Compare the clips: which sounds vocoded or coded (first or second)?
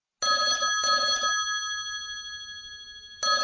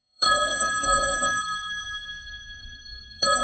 second